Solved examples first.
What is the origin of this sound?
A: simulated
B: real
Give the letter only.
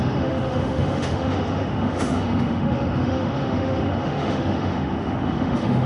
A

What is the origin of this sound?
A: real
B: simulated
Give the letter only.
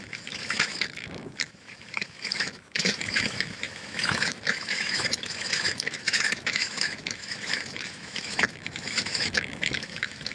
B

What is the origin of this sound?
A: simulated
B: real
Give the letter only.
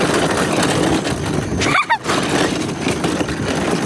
B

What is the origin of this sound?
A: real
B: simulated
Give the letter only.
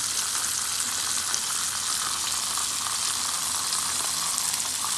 A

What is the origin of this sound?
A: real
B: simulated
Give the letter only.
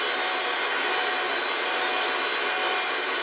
A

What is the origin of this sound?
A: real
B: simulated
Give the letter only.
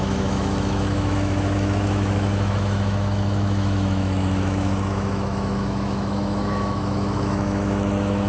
B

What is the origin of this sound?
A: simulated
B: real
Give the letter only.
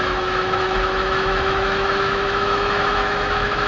A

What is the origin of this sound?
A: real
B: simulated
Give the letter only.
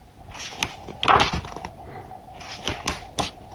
A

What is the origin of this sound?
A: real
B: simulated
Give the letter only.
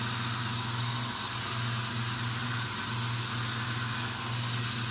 A